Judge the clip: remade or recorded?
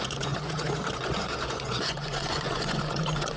remade